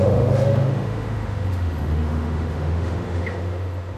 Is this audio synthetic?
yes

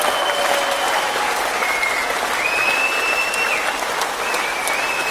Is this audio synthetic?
no